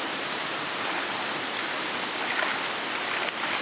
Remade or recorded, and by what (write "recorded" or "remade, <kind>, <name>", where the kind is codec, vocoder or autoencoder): recorded